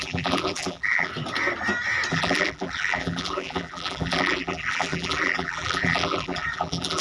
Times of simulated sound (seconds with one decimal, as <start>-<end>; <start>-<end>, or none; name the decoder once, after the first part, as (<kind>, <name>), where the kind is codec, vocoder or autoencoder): 0.0-1.1 (vocoder, BigVGAN v2); 2.1-7.0